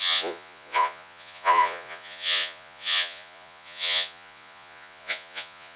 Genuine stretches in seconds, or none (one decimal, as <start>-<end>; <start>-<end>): none